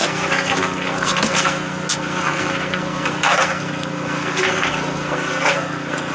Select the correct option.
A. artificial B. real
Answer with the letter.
A